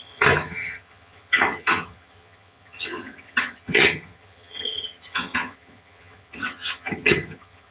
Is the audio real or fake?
fake